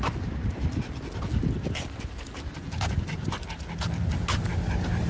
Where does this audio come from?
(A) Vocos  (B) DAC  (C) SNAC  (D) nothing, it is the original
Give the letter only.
D